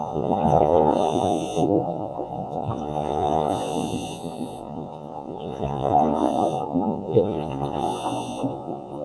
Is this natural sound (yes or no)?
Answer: no